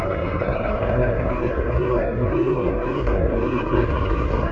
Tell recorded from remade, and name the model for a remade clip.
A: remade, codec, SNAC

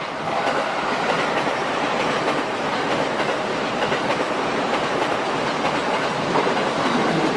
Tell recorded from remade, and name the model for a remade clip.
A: remade, vocoder, BigVGAN v2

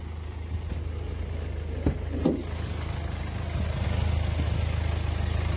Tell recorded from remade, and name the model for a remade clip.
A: recorded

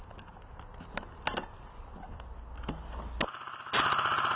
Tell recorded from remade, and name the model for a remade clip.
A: recorded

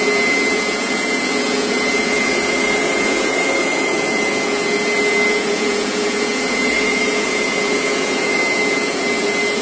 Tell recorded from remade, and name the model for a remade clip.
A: remade, vocoder, Vocos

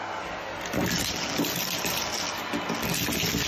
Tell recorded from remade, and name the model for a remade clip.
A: recorded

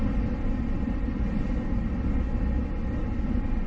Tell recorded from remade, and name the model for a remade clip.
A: recorded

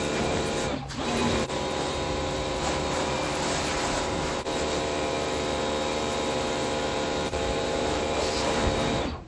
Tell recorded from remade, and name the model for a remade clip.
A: remade, vocoder, BigVGAN v2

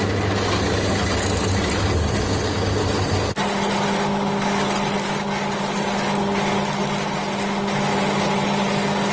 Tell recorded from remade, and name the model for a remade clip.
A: recorded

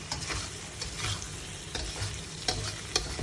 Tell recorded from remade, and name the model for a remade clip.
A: recorded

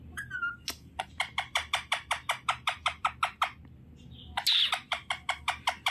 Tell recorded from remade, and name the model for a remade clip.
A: recorded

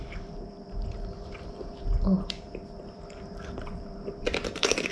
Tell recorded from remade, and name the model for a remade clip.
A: remade, vocoder, BigVGAN v2